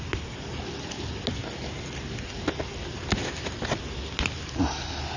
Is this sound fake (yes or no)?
no